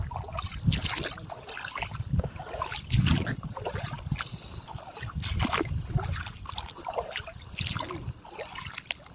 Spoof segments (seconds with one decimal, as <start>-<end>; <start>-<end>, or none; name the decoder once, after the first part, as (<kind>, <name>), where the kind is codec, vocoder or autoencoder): none